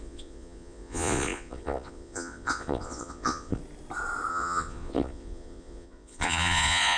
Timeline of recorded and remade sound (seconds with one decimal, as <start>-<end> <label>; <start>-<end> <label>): 0.0-3.6 remade; 3.6-4.3 recorded; 4.3-7.0 remade